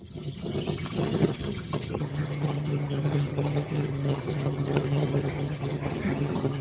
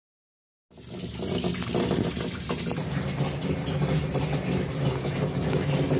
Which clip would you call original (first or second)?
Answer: second